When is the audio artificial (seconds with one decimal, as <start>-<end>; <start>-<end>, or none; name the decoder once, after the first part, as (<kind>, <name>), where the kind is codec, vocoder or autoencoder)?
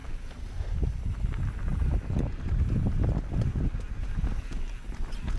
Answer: none